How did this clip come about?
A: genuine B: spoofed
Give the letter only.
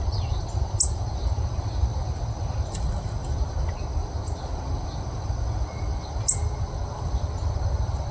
A